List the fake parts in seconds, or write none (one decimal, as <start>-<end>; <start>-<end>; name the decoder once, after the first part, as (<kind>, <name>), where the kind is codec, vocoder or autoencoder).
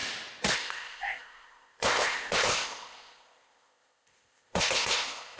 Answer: 0.5-5.4 (codec, ZipCodec)